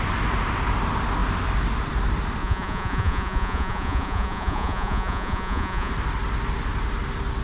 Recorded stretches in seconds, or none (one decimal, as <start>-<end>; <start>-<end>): 0.0-2.4; 5.9-7.4